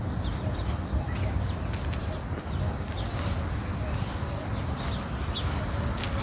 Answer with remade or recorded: recorded